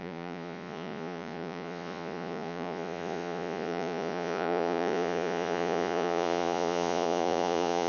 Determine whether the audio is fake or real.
fake